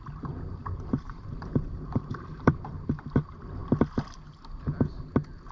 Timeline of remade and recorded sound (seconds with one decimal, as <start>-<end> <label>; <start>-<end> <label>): 0.0-0.6 recorded; 0.6-3.0 remade; 3.0-5.5 recorded